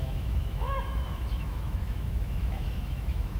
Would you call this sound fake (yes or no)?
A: yes